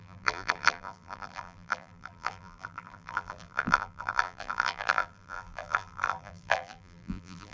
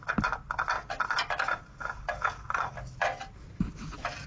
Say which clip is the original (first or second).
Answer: second